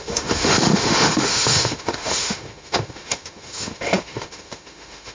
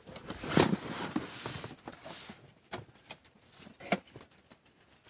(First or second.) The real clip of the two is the second